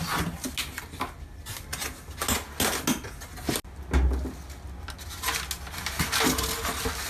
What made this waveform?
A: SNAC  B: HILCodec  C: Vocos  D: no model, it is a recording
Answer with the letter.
D